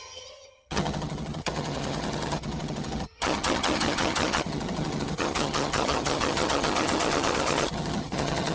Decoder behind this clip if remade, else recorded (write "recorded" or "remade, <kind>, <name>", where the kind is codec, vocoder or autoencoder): remade, vocoder, HiFi-GAN